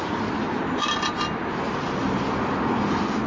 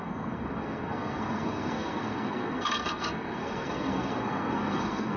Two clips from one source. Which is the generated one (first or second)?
second